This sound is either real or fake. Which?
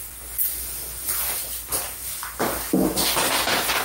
real